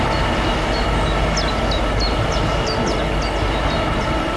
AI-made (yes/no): no